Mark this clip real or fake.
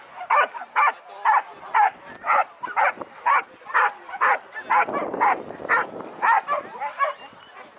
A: real